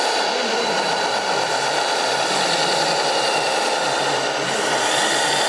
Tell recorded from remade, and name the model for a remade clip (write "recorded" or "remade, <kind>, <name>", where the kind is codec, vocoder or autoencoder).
remade, vocoder, BigVGAN v2